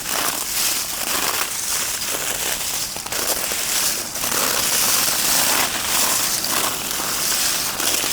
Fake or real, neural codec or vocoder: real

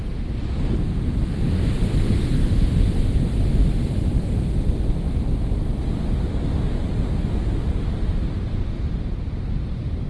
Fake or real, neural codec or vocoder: real